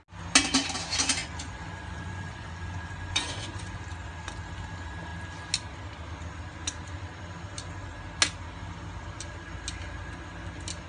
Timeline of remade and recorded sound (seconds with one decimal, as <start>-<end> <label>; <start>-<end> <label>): 0.0-1.2 recorded; 1.2-3.8 remade; 3.8-10.9 recorded